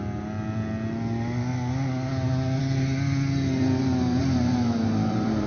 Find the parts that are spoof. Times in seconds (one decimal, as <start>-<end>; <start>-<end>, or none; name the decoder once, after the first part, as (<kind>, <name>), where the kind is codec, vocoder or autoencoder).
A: 4.2-5.5 (vocoder, BigVGAN v2)